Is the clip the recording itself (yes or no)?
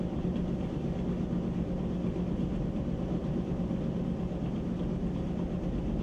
yes